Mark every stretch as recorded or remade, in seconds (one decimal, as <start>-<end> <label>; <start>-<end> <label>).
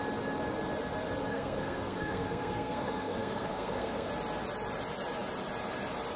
0.0-1.3 recorded; 1.3-4.1 remade; 4.1-6.2 recorded